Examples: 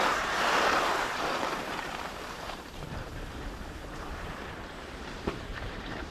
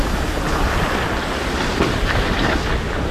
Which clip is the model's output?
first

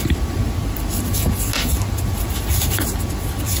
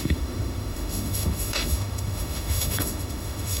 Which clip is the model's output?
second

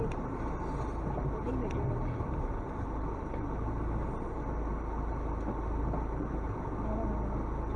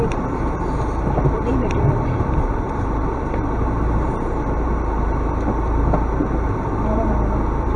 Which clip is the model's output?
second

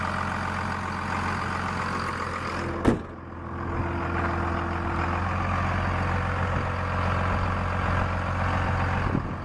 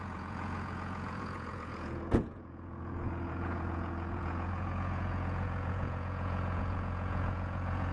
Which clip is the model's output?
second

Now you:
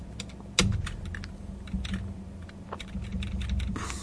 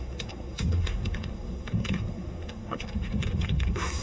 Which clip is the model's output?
second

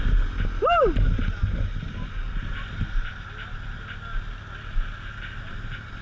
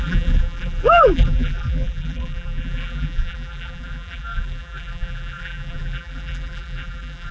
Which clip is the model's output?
second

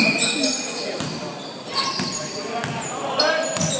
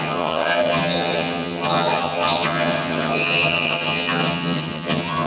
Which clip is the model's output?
second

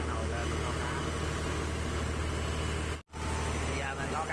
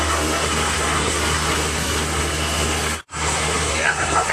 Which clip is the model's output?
second